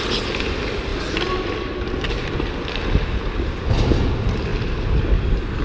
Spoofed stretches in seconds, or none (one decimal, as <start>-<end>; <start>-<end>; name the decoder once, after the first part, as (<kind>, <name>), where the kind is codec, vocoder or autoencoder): none

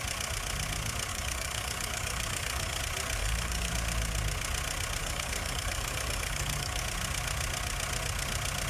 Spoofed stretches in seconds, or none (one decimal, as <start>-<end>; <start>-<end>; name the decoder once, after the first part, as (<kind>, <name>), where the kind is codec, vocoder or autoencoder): 1.1-2.8 (codec, DAC); 3.2-3.7; 5.0-6.8

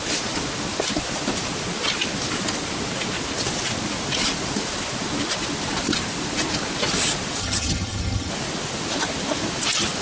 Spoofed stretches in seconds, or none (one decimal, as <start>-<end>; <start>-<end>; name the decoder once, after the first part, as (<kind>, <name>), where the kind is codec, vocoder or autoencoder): 7.4-8.3 (vocoder, HiFi-GAN)

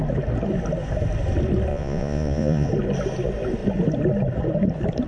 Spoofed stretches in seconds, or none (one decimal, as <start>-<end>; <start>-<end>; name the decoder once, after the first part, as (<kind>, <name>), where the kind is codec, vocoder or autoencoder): 1.7-2.7 (vocoder, Vocos)